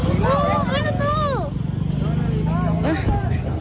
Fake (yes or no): no